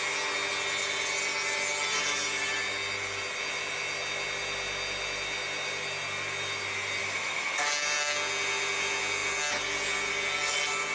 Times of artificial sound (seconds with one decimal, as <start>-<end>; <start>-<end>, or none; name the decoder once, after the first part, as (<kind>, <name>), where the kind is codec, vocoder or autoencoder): 7.0-7.5 (autoencoder, DAC-VAE)